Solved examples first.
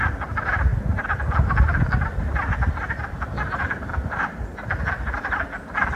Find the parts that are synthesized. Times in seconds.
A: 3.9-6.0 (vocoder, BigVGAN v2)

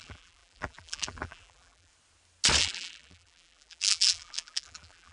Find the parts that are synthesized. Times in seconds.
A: 0.0-1.9 (vocoder, BigVGAN v2); 2.6-5.1

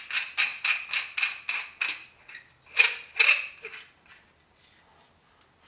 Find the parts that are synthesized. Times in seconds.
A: none

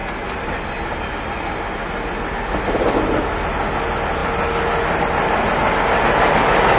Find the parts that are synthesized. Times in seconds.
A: none

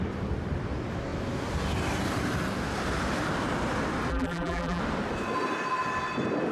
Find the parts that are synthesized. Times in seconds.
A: 4.1-4.8 (vocoder, BigVGAN v2)

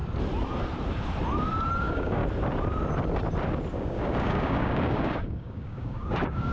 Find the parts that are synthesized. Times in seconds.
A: 1.8-2.2 (codec, DAC); 3.7-6.5